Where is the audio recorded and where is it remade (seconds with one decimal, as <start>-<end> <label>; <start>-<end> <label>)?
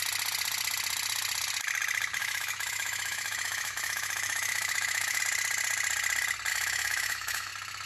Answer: 0.0-2.2 recorded; 2.2-5.2 remade; 5.2-6.5 recorded; 6.5-7.5 remade; 7.5-7.9 recorded